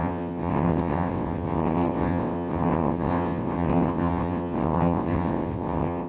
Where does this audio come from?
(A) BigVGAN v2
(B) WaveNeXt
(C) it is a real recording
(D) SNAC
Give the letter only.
B